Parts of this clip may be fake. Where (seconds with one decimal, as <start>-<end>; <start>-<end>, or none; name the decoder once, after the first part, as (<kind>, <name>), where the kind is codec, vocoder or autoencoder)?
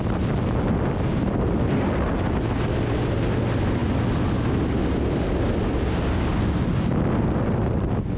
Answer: none